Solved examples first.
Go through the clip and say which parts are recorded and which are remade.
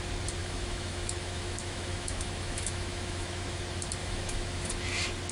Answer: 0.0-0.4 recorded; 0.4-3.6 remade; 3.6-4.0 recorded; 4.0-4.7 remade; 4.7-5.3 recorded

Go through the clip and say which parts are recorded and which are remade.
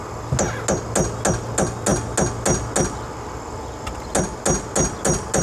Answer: 0.0-5.4 recorded